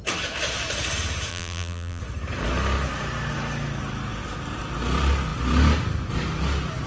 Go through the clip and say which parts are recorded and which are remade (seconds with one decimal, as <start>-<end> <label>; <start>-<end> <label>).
0.0-1.3 recorded; 1.3-2.0 remade; 2.0-6.9 recorded